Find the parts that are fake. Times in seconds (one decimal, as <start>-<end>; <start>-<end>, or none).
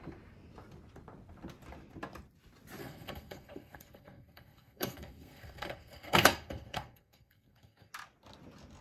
2.8-7.9